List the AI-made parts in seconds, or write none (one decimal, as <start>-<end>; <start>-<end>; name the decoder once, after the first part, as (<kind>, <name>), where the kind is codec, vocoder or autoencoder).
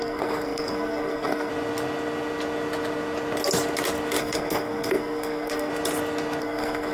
0.0-1.5 (codec, SNAC); 4.2-5.7; 6.4-6.9